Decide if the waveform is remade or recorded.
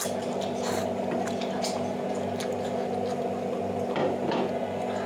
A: recorded